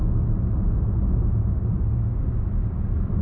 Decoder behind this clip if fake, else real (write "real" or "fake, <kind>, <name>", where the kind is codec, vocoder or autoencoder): real